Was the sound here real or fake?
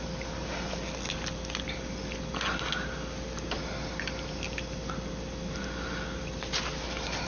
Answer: real